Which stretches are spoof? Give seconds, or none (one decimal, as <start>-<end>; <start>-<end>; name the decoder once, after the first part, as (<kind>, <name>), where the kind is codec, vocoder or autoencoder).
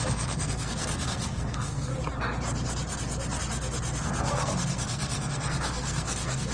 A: 0.0-1.9 (codec, SNAC); 4.0-6.5